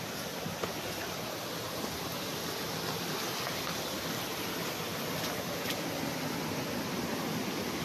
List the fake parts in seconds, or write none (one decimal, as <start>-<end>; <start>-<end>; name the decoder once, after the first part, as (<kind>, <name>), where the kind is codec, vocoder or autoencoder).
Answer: none

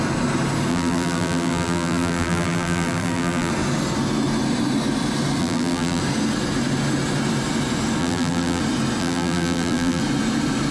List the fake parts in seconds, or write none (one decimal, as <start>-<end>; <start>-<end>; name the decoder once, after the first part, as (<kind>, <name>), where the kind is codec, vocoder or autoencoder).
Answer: 0.7-3.5 (vocoder, BigVGAN v2); 5.4-6.0; 8.0-8.6; 9.0-10.0

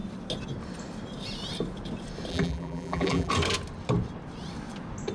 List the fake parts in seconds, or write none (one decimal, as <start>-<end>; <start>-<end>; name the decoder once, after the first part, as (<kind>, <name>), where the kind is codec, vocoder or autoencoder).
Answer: 2.3-3.3 (vocoder, BigVGAN v2)

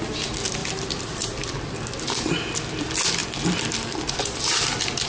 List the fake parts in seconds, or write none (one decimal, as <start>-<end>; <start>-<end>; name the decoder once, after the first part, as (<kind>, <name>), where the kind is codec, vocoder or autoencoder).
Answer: 0.6-2.0 (vocoder, BigVGAN v2); 3.2-5.1

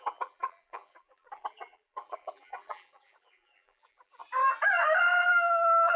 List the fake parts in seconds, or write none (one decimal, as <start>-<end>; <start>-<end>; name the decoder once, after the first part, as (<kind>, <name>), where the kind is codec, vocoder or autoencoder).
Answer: 0.0-4.2 (vocoder, BigVGAN v2); 5.3-6.0

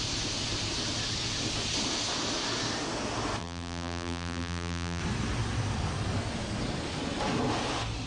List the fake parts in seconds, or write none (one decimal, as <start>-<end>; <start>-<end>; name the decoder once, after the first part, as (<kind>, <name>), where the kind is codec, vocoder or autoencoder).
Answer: 3.4-5.0 (vocoder, BigVGAN v2)

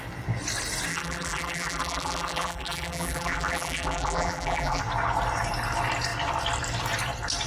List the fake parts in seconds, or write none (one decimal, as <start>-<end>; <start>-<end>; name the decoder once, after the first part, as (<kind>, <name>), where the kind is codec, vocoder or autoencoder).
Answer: 0.9-4.8 (vocoder, BigVGAN v2)